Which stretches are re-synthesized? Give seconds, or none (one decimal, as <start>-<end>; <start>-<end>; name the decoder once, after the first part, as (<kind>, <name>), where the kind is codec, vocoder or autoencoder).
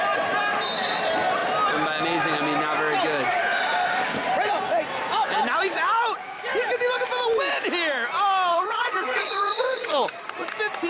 8.5-10.1 (vocoder, HiFi-GAN)